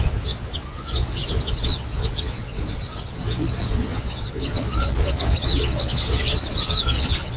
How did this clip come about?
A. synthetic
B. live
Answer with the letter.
A